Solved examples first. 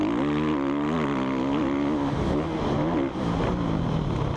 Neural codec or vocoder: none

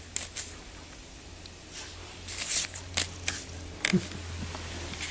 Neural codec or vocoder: none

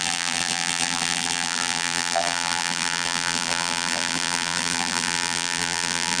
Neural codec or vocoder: vocoder, BigVGAN v2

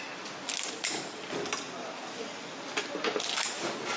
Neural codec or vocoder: none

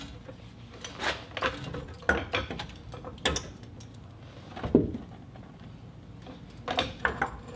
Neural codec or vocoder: none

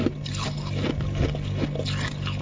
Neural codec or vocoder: none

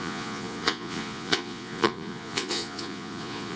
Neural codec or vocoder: vocoder, Vocos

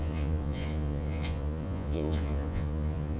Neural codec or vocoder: vocoder, Vocos